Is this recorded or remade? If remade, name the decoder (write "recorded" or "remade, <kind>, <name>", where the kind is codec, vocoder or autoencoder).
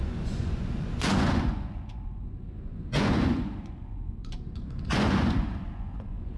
remade, vocoder, Vocos